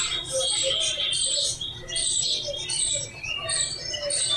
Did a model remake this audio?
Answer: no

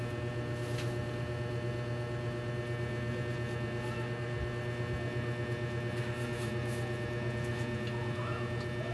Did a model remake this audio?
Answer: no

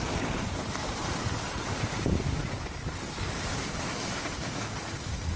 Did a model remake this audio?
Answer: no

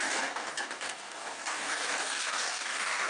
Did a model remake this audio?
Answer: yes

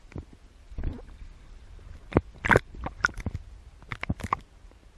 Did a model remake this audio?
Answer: no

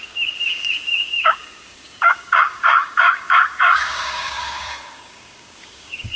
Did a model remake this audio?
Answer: yes